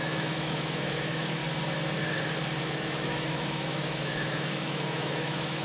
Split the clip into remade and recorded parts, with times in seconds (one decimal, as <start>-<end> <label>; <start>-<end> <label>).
0.0-1.4 remade; 1.4-2.6 recorded; 2.6-5.6 remade